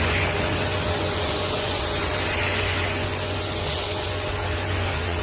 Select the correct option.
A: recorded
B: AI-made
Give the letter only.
B